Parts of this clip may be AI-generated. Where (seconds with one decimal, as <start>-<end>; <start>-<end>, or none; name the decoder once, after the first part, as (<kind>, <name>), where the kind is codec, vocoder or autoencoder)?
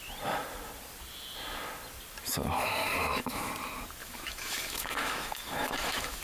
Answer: 3.0-3.5 (autoencoder, DAC-VAE); 4.0-6.2